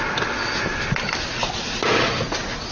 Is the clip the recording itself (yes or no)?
yes